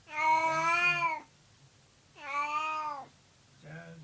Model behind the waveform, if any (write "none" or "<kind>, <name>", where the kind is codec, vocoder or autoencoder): none